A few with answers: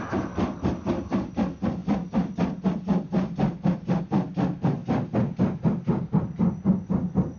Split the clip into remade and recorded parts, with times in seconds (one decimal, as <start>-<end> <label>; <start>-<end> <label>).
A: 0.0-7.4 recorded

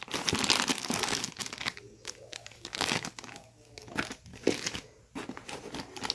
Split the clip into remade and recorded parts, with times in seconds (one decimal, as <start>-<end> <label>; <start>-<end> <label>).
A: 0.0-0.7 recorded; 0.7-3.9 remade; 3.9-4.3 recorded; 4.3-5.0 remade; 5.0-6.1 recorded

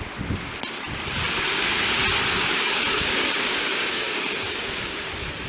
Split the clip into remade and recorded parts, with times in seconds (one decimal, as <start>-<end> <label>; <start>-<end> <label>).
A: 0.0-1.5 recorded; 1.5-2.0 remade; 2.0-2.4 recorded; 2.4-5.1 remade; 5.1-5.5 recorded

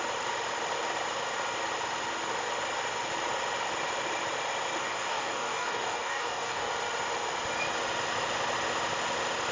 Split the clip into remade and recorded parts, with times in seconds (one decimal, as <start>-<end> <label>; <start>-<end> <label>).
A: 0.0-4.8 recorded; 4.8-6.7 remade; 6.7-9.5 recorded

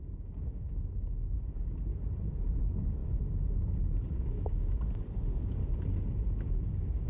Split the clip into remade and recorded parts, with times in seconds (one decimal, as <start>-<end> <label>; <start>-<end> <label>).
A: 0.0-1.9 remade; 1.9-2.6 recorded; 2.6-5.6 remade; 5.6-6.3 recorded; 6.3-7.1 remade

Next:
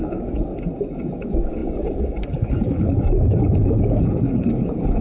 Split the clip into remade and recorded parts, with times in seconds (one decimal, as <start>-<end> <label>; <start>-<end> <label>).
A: 0.0-0.5 remade; 0.5-1.1 recorded; 1.1-5.0 remade